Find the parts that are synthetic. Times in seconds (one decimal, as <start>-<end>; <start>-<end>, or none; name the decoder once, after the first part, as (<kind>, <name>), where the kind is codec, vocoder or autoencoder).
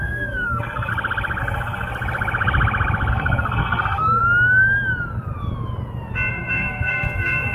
0.0-0.9 (codec, SNAC); 1.4-1.9; 3.1-4.2; 6.3-7.5